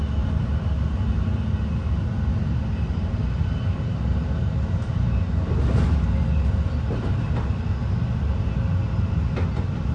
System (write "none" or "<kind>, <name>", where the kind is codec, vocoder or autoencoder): none